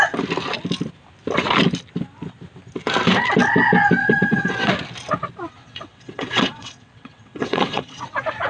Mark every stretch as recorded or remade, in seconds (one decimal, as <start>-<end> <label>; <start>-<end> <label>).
0.0-4.0 recorded; 4.0-4.7 remade; 4.7-5.6 recorded; 5.6-8.1 remade; 8.1-8.5 recorded